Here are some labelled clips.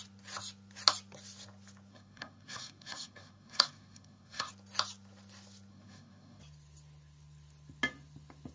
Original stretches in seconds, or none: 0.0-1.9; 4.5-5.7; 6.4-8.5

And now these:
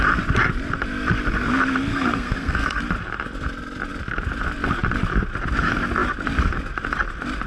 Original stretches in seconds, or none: 0.0-1.9; 2.8-7.5